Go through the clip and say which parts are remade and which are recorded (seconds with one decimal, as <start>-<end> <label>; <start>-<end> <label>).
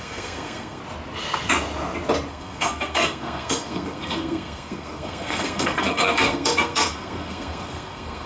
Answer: 0.0-0.8 remade; 0.8-2.3 recorded; 2.3-8.3 remade